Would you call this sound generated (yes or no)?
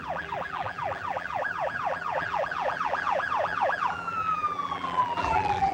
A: yes